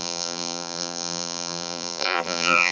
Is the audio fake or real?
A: fake